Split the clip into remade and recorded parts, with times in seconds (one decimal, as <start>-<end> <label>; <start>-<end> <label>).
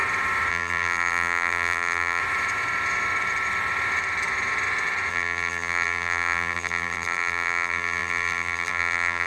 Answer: 0.0-0.5 recorded; 0.5-2.2 remade; 2.2-5.1 recorded; 5.1-9.3 remade